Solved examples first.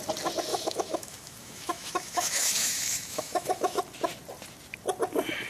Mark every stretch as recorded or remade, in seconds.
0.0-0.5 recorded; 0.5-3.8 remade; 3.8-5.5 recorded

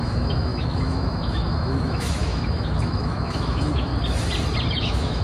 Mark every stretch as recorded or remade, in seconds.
0.0-3.9 remade; 3.9-4.7 recorded; 4.7-5.2 remade

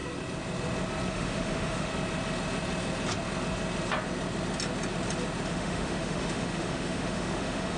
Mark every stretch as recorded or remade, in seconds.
0.0-1.1 recorded; 1.1-1.9 remade; 1.9-5.5 recorded; 5.5-7.8 remade

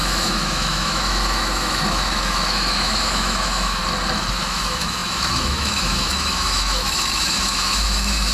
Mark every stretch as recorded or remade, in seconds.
0.0-3.8 remade; 3.8-4.4 recorded; 4.4-8.3 remade

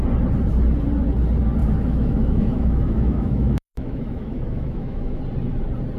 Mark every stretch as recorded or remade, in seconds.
0.0-1.6 recorded; 1.6-5.2 remade; 5.2-6.0 recorded

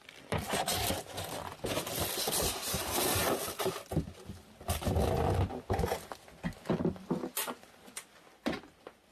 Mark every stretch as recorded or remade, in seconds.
0.0-9.1 recorded